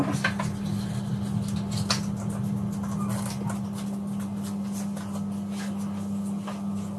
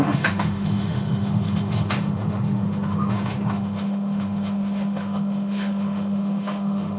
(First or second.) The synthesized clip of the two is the second